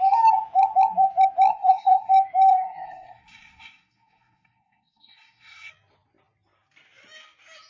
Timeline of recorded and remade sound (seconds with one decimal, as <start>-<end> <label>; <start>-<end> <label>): 0.0-1.5 recorded; 1.5-2.1 remade; 2.1-2.5 recorded; 2.5-5.7 remade; 5.7-7.7 recorded